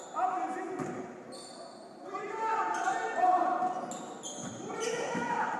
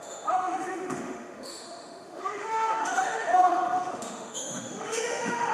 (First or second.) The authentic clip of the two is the first